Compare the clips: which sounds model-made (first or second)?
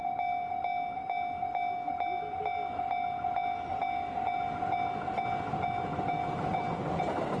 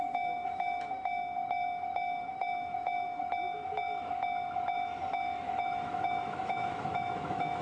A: second